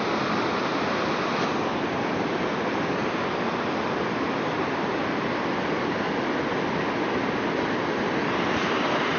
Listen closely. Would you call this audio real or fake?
real